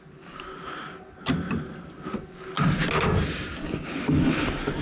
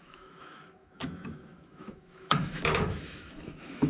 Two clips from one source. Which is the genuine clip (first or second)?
first